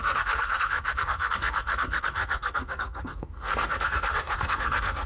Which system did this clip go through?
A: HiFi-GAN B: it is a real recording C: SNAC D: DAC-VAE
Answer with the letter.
C